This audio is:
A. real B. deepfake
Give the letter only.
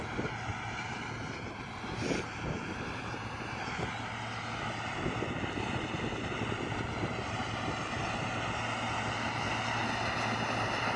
A